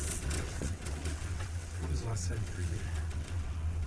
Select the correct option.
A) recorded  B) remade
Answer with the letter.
B